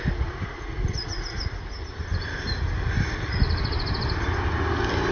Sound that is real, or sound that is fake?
real